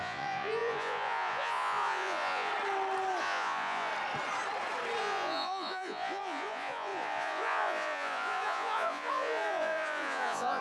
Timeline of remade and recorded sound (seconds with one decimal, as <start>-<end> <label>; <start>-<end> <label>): 0.0-2.5 remade; 2.5-3.2 recorded; 3.2-3.9 remade; 3.9-5.0 recorded; 5.0-10.6 remade